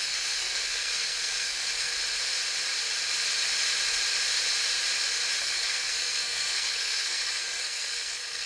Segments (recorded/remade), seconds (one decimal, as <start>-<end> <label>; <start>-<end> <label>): 0.0-1.9 remade; 1.9-5.4 recorded; 5.4-8.5 remade